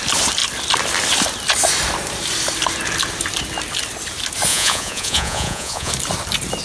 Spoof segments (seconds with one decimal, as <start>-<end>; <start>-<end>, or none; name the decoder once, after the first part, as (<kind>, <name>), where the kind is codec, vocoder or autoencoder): 4.5-5.9 (vocoder, Vocos)